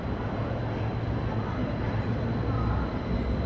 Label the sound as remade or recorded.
recorded